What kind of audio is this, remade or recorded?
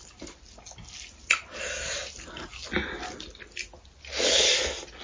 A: recorded